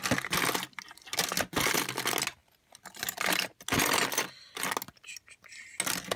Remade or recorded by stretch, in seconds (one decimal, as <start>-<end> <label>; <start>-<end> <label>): 0.0-6.2 recorded